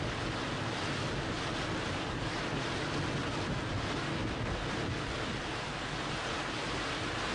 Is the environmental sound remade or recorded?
recorded